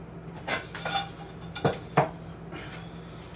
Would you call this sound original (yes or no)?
yes